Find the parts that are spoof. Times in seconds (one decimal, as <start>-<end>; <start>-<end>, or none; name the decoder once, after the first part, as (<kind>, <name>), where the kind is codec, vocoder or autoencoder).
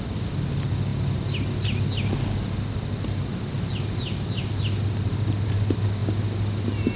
none